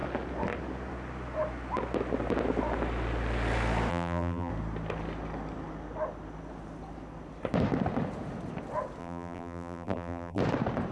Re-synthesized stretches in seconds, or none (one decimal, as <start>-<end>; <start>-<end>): 3.9-4.5; 9.0-10.4